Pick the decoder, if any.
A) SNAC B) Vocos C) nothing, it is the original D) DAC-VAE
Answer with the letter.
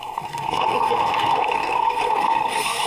A